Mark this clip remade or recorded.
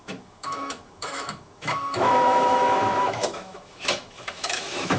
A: remade